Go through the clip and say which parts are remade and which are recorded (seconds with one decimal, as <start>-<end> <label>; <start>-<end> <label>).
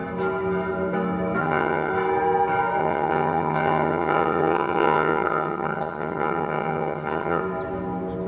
0.0-1.4 recorded; 1.4-1.9 remade; 1.9-2.8 recorded; 2.8-7.4 remade; 7.4-8.3 recorded